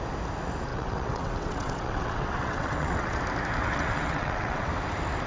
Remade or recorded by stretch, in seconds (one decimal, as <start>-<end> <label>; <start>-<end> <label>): 0.0-0.7 recorded; 0.7-3.2 remade; 3.2-3.6 recorded; 3.6-4.7 remade; 4.7-5.3 recorded